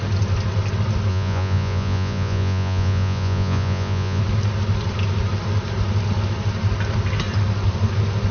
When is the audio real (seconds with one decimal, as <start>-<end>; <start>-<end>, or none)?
0.0-1.1; 4.2-8.3